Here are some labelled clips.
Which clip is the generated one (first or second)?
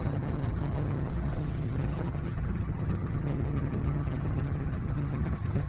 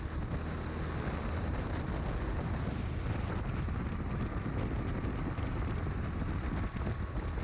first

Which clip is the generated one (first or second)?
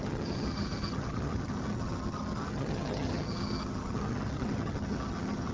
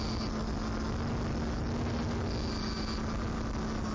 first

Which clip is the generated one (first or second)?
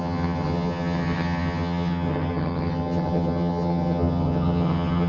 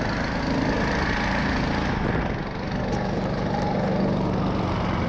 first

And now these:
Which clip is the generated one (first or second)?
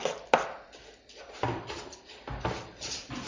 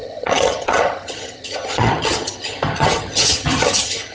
second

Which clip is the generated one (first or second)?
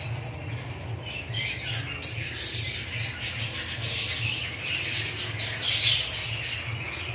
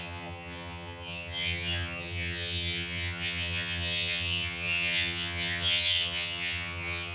second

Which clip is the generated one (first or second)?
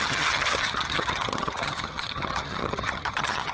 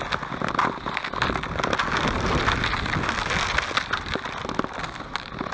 first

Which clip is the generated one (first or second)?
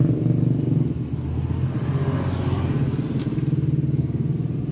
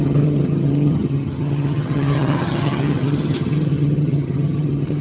second